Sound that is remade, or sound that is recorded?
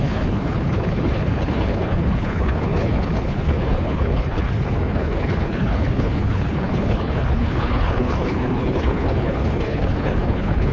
remade